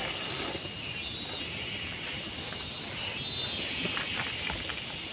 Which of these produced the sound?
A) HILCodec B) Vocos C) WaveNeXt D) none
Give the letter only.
D